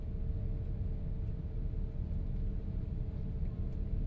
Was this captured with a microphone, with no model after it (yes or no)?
yes